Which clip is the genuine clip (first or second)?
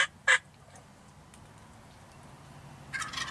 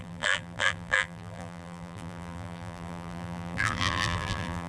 first